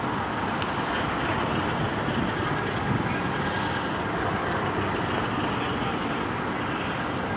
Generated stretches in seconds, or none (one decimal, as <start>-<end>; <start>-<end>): none